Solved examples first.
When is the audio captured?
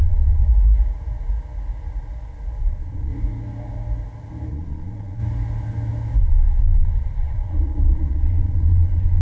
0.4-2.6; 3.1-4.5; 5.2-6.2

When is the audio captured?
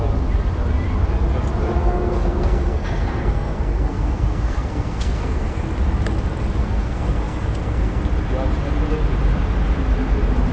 0.0-1.8; 5.6-6.6; 8.0-10.5